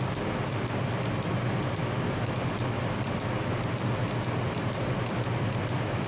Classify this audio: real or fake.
real